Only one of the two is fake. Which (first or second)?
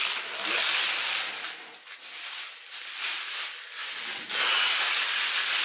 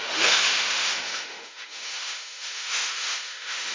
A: second